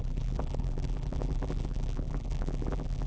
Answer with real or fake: fake